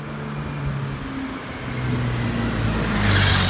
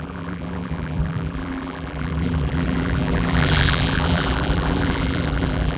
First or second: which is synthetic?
second